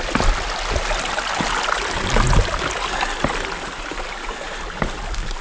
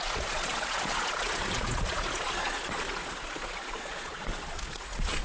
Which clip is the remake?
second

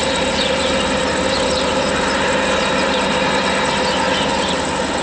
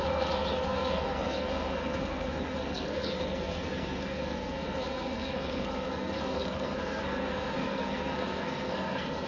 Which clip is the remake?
second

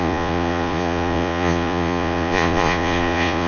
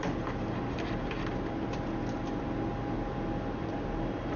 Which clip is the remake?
first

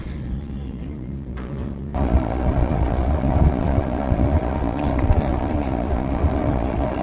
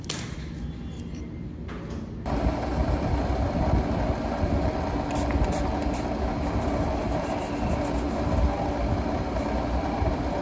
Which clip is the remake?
first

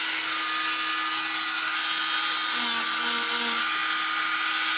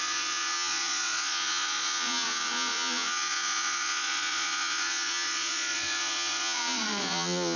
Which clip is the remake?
second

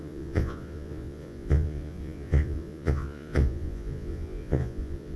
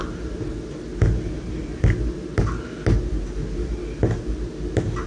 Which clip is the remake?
first